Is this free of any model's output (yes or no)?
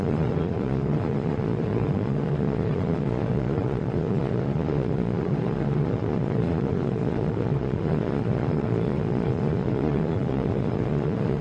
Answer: no